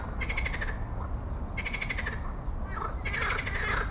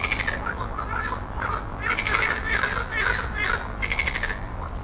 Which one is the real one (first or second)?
first